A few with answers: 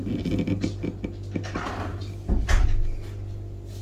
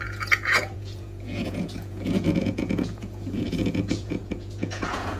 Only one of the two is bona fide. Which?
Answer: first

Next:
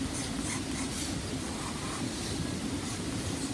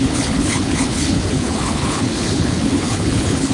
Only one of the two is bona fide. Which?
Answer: first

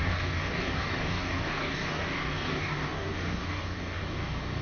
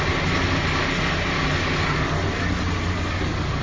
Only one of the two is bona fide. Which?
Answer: second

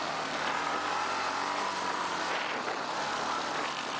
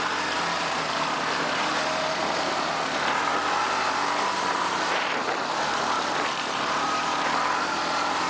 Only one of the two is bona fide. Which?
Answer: first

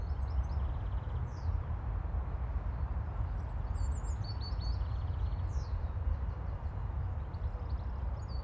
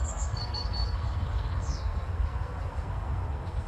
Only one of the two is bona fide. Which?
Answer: first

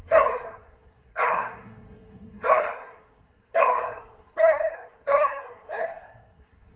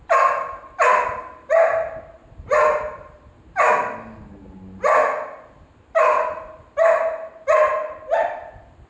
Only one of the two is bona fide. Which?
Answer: second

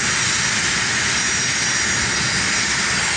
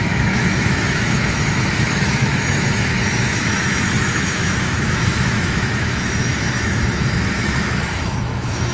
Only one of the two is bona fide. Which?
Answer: first